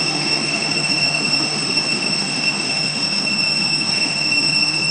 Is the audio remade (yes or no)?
yes